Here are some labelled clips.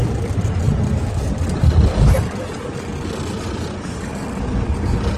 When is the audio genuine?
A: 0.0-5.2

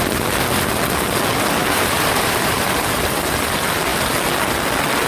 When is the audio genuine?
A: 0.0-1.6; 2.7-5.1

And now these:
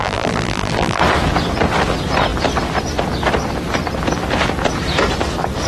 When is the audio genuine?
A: 1.0-5.7

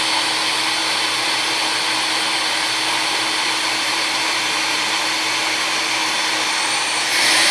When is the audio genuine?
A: 0.0-3.9; 5.0-6.6

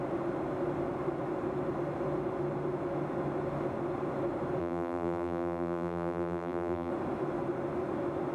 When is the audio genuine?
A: 0.0-4.6; 6.9-8.3